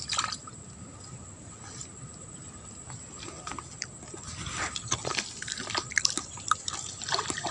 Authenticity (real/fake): real